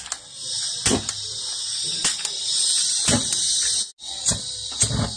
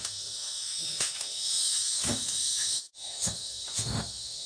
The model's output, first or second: second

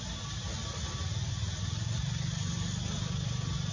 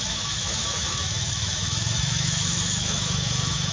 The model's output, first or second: second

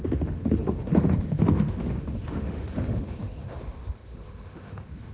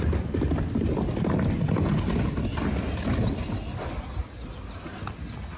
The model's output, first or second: first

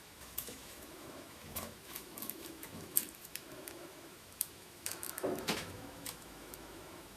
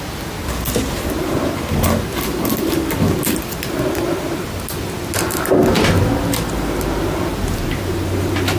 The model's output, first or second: first